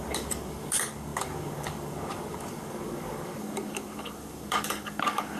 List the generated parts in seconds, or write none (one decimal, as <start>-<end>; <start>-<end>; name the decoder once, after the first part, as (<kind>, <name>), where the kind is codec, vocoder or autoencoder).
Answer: 0.0-5.4 (codec, DAC)